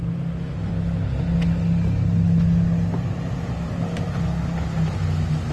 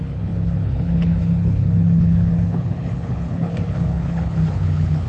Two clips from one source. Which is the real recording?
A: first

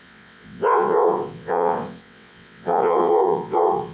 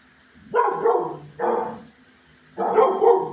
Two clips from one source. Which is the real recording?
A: second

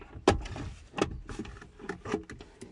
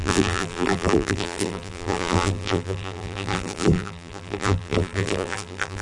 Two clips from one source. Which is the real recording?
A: first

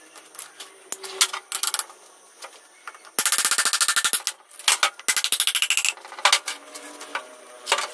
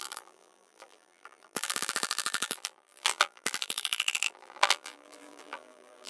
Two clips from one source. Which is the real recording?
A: first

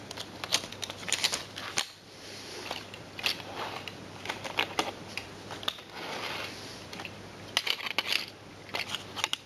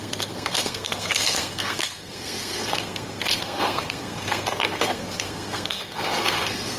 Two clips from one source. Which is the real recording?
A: first